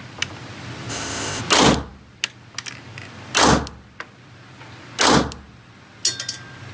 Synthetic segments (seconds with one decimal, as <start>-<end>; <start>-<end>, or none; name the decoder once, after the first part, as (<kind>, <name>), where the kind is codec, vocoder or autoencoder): 0.9-1.4 (codec, ZipCodec)